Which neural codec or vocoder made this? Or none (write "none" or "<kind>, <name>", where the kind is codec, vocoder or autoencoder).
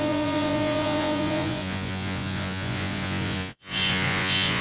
vocoder, Vocos